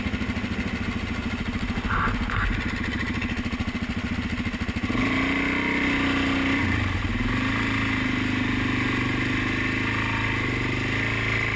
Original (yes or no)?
yes